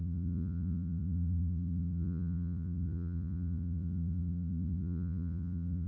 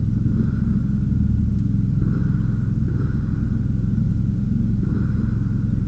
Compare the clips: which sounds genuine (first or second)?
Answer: second